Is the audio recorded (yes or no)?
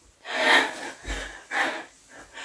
yes